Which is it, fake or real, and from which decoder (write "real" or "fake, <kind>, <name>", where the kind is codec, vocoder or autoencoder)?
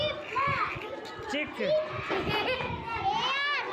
real